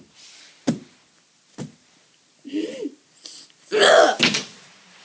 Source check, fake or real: real